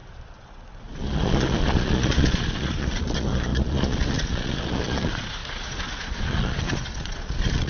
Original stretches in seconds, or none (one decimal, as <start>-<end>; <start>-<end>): none